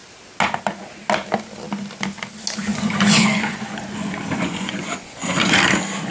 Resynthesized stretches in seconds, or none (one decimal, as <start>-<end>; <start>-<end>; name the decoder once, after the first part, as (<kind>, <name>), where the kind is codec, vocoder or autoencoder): 2.7-5.6 (vocoder, Vocos)